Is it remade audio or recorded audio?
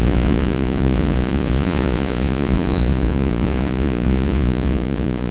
remade